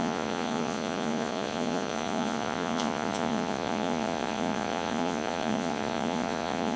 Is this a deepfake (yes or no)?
yes